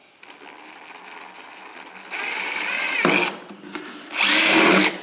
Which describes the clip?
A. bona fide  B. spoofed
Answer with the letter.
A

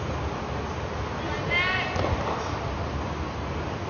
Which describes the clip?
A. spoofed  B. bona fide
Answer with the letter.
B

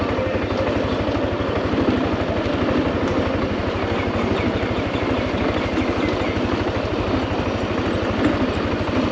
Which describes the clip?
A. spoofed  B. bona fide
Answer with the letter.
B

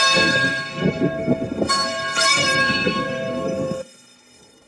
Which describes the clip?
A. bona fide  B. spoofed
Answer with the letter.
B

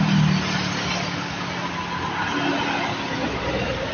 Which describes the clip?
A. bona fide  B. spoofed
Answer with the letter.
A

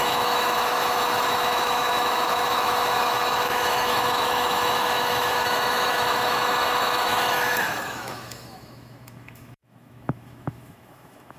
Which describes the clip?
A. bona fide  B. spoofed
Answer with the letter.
B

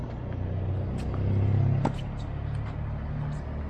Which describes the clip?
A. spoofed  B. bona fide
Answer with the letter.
B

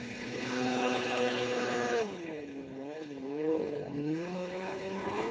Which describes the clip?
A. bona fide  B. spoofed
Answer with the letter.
B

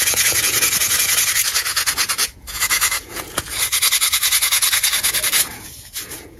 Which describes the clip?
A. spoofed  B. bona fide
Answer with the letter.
A